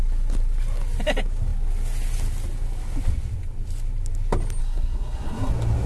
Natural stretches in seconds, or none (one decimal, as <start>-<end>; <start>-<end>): 0.0-4.6; 5.5-5.9